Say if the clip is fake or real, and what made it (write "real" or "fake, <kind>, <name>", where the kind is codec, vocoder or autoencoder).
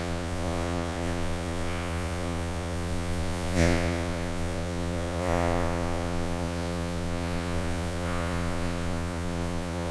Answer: fake, vocoder, Vocos